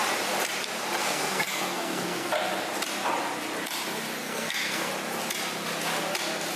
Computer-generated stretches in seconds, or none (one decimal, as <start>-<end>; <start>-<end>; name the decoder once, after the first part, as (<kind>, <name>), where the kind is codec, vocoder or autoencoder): 1.0-2.3 (codec, SNAC); 4.2-4.9